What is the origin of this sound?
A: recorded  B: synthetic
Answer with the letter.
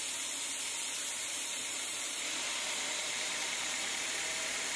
B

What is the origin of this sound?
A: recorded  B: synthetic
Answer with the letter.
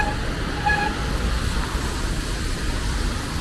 A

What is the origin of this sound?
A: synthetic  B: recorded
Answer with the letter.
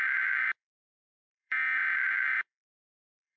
A